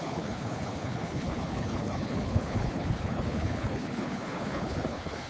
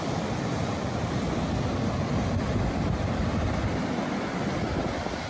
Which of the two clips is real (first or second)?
second